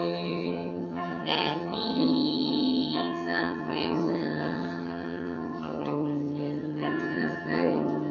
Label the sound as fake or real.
fake